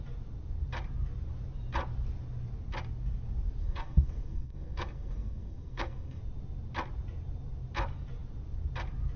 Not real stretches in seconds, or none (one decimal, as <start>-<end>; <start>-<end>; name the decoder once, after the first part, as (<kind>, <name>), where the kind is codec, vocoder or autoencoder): 3.6-6.2 (codec, SNAC)